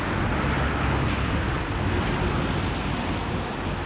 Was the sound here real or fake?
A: real